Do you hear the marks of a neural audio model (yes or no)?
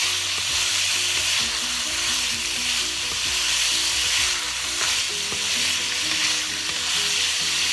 no